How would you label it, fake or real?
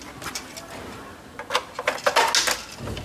real